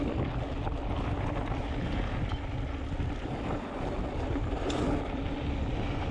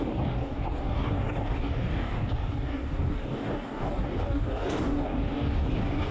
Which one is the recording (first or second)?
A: first